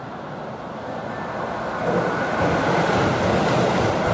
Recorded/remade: recorded